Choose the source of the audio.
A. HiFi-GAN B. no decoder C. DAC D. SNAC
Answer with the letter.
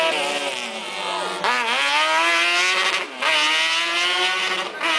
B